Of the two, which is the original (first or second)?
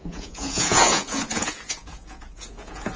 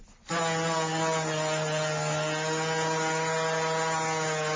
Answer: second